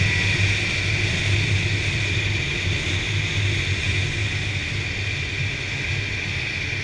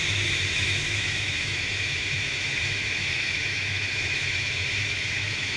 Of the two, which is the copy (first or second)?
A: second